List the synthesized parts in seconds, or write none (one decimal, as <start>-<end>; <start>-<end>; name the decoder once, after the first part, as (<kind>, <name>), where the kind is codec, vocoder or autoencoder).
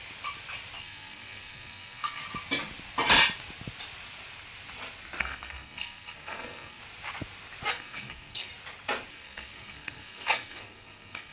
0.8-2.2 (codec, SNAC); 5.2-6.8; 7.7-8.5; 9.1-11.3